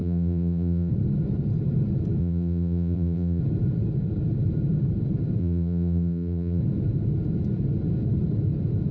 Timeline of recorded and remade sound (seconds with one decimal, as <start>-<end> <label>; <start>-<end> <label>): 0.0-0.9 remade; 0.9-2.2 recorded; 2.2-3.4 remade; 3.4-5.4 recorded; 5.4-6.6 remade; 6.6-8.9 recorded